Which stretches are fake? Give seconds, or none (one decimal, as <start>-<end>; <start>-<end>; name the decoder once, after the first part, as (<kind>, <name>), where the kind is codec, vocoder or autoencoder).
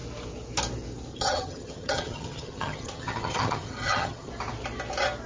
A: 1.1-4.3 (vocoder, HiFi-GAN)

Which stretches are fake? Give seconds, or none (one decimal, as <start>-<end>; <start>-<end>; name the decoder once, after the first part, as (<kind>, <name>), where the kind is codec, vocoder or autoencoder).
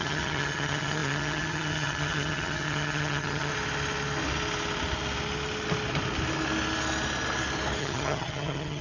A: 0.0-3.5 (vocoder, HiFi-GAN); 7.8-8.8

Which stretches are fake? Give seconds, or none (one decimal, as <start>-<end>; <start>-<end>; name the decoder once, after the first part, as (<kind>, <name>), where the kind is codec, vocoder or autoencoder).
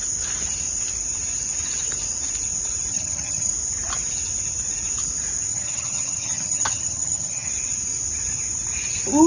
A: 2.9-3.5 (vocoder, HiFi-GAN); 5.5-7.5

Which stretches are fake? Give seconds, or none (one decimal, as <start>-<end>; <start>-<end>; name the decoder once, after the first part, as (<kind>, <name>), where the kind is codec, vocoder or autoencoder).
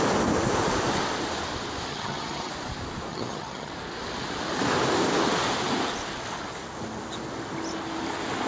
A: 1.9-2.5 (vocoder, HiFi-GAN); 3.1-3.7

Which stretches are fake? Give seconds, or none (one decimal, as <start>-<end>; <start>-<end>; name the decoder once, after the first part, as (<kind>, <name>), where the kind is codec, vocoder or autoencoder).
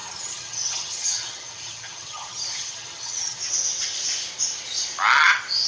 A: 0.0-3.4 (vocoder, HiFi-GAN)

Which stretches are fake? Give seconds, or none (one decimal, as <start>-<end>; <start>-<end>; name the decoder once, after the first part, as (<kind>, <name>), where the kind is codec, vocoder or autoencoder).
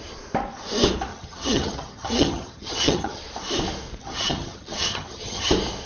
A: 1.1-3.2 (vocoder, HiFi-GAN); 4.0-5.5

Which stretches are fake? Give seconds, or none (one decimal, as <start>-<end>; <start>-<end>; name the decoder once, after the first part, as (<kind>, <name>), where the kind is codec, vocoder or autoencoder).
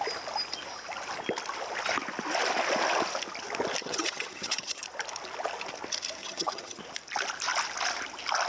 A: 3.8-4.8 (vocoder, HiFi-GAN); 6.2-6.8